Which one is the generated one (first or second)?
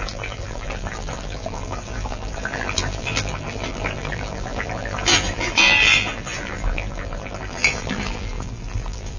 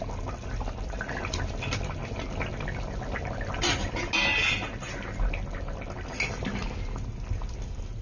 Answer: first